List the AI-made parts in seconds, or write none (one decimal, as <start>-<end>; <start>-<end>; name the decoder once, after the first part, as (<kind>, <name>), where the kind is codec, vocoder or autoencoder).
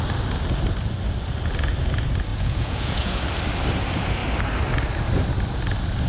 2.3-3.2 (vocoder, Vocos)